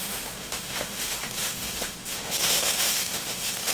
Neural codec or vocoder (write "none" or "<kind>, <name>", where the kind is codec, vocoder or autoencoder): autoencoder, DAC-VAE